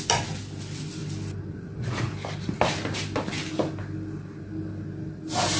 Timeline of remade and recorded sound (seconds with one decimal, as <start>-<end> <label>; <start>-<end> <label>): 0.0-5.6 recorded